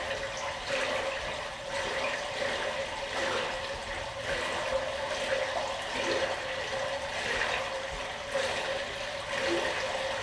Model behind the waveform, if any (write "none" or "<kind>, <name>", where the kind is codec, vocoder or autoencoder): none